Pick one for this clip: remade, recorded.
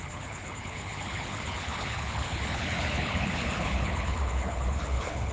remade